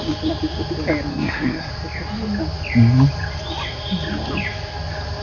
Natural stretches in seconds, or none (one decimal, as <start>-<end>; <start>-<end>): 0.0-1.1; 1.7-5.2